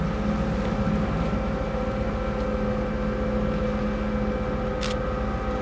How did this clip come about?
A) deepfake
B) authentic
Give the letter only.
B